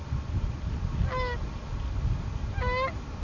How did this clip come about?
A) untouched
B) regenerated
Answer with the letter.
A